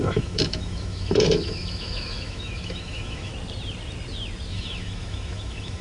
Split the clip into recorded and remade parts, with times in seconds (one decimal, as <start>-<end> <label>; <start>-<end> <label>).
0.0-3.3 remade; 3.3-4.5 recorded; 4.5-5.8 remade